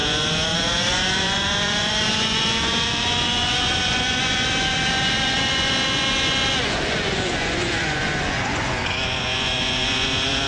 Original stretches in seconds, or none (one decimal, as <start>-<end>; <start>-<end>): none